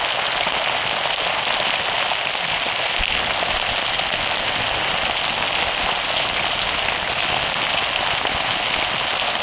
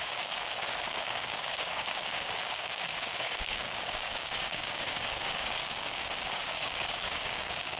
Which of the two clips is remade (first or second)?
second